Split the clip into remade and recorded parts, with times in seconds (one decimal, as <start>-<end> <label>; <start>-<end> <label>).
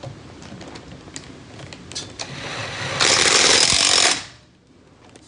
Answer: 0.0-5.3 recorded